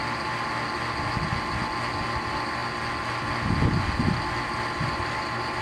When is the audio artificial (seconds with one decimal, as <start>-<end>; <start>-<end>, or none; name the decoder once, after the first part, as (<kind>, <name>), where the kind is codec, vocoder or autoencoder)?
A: none